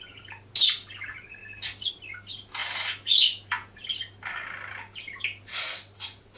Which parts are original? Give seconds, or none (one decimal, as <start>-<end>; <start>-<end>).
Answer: 0.0-5.5